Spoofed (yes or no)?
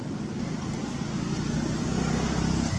no